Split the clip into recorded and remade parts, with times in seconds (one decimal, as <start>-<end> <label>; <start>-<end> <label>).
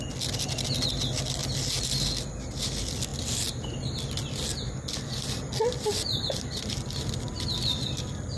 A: 0.0-8.4 recorded